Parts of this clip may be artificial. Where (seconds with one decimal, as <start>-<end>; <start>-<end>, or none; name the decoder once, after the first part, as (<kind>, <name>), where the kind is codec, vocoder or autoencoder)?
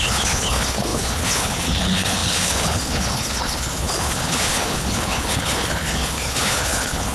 0.0-7.1 (codec, HILCodec)